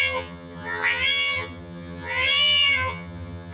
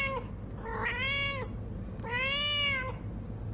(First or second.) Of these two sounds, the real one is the second